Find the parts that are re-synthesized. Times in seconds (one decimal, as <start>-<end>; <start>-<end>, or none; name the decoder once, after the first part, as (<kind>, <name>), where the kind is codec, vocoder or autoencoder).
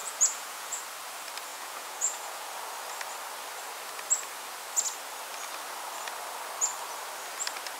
0.0-0.8 (vocoder, Vocos); 1.5-2.5